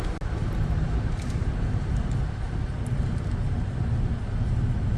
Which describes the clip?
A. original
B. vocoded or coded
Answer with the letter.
A